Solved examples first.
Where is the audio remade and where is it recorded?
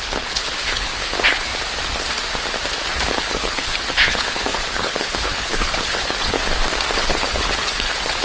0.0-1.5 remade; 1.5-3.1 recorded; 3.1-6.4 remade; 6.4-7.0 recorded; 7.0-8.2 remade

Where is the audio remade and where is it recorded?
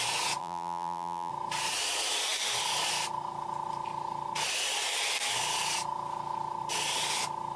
0.0-0.4 recorded; 0.4-1.3 remade; 1.3-7.6 recorded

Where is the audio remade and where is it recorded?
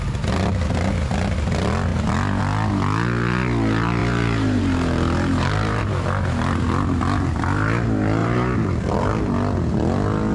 0.0-4.0 recorded; 4.0-5.8 remade; 5.8-8.2 recorded; 8.2-9.2 remade; 9.2-10.3 recorded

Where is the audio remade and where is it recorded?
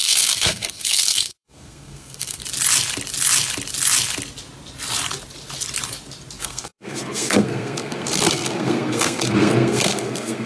0.0-2.4 remade; 2.4-6.4 recorded; 6.4-10.5 remade